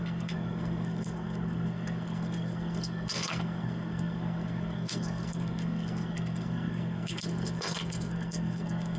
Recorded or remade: remade